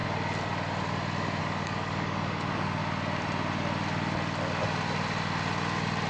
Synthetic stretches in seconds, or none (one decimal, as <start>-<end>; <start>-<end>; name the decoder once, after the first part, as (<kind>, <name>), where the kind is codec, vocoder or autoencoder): 1.4-2.8 (codec, DAC)